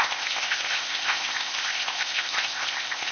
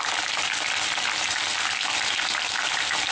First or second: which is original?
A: second